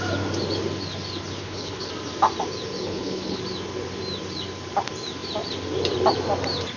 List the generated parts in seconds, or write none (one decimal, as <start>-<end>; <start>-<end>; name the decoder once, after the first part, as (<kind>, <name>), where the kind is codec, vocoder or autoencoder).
1.4-1.9 (codec, HILCodec); 2.8-3.4